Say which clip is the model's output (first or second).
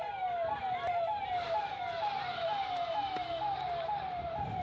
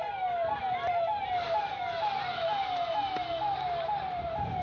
first